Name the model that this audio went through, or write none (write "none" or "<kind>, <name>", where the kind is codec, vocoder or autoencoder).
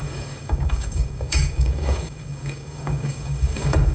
codec, DAC